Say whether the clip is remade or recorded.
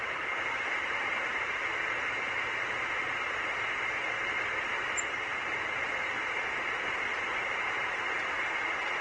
recorded